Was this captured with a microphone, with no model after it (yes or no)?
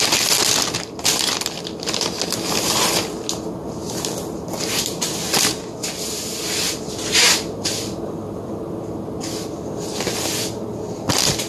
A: yes